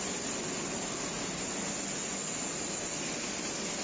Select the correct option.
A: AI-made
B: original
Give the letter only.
B